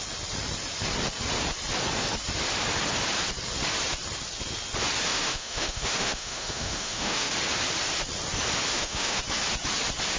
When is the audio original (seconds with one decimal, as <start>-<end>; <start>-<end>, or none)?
0.0-5.1; 7.3-8.7; 9.2-10.2